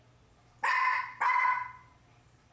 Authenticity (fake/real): real